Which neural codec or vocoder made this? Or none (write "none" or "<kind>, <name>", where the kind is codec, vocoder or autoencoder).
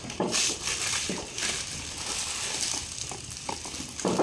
none